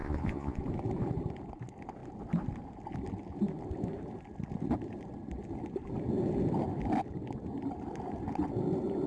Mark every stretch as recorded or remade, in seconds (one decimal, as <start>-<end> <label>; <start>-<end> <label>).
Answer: 0.0-0.6 remade; 0.6-9.1 recorded